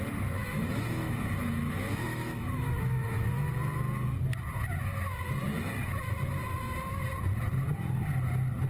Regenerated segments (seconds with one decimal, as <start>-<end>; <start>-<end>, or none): 0.4-3.5